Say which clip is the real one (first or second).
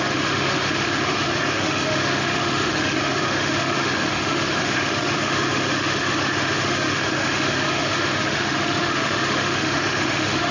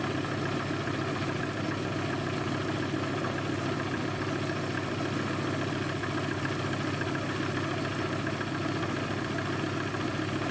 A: second